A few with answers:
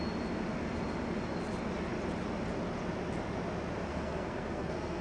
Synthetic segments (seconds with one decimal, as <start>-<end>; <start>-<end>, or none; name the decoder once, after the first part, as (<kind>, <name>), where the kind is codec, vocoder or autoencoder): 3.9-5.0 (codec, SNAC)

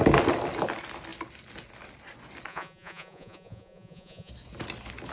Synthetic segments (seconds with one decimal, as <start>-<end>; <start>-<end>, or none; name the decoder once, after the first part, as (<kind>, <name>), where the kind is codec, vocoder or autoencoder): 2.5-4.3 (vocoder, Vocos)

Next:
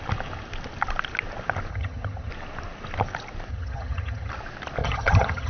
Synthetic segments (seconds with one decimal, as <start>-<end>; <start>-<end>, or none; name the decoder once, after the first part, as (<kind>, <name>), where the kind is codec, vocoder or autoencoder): 1.7-2.3 (vocoder, HiFi-GAN); 3.5-4.3; 4.8-5.5